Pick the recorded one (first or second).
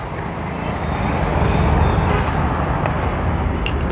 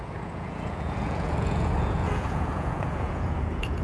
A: first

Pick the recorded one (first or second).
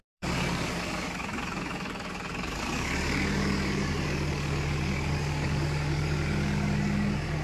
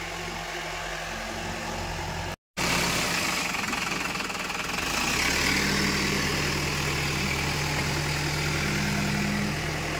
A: second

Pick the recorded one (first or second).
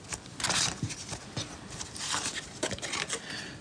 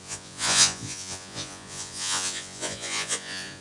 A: first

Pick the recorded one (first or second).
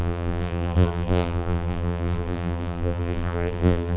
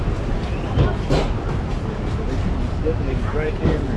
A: second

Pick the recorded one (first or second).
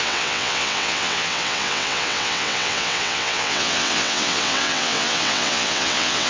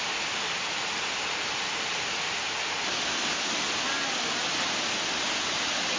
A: second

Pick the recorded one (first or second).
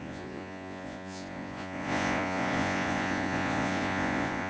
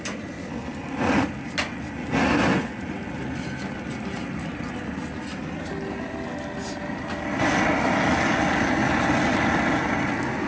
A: second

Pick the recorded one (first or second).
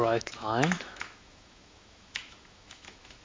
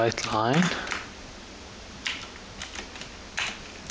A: second